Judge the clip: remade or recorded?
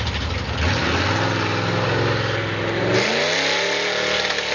recorded